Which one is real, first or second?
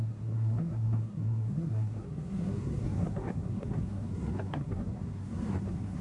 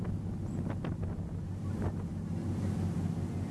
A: second